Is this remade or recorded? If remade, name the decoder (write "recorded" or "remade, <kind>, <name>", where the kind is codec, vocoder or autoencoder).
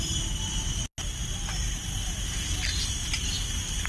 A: recorded